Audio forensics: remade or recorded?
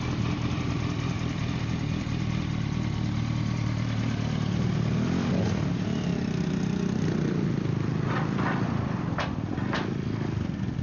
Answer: recorded